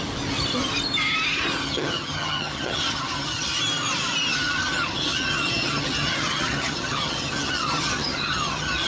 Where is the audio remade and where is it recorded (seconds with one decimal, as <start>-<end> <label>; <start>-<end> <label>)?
0.0-1.6 recorded; 1.6-3.6 remade; 3.6-4.3 recorded; 4.3-8.9 remade